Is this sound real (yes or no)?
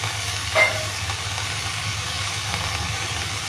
no